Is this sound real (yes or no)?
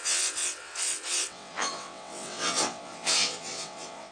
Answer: no